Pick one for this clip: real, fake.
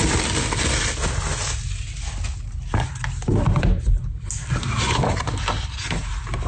real